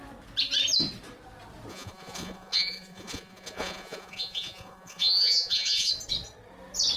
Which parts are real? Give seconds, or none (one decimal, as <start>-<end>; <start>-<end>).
0.0-1.7; 5.9-7.0